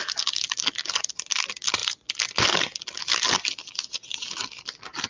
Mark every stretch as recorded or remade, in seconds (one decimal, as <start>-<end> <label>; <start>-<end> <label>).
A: 0.0-5.1 recorded